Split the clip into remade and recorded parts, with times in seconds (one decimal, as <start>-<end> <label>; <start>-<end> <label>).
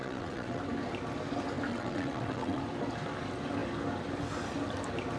0.0-0.6 remade; 0.6-1.7 recorded; 1.7-2.6 remade; 2.6-5.2 recorded